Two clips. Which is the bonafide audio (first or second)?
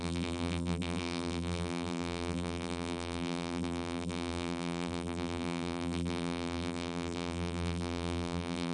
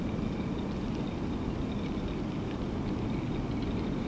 second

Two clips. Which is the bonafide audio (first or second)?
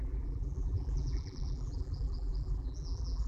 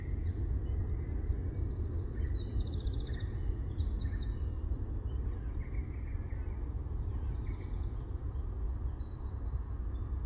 second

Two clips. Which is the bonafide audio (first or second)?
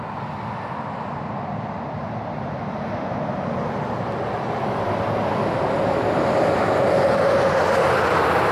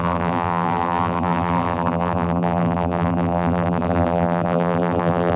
first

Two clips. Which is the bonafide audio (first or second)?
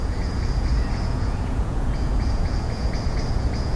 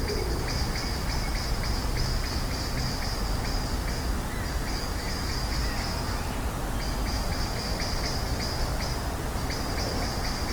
second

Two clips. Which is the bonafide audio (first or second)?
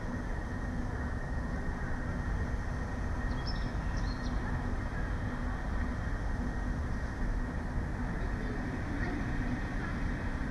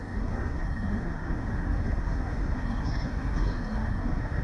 first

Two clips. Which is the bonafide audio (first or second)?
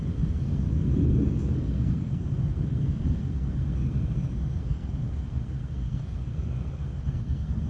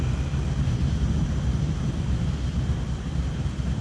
second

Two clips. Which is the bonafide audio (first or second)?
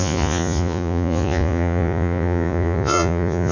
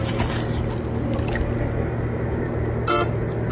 second